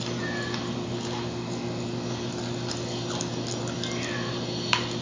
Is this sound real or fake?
real